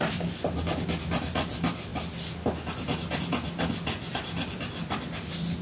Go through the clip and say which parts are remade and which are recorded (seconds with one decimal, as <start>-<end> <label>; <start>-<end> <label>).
0.0-5.6 recorded